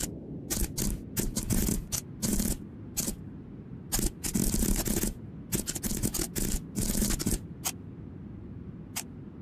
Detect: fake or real real